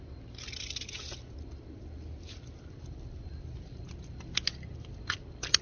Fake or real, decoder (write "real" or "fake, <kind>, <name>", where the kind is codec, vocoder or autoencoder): real